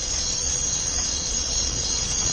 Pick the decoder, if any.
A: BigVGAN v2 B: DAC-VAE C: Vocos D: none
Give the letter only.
C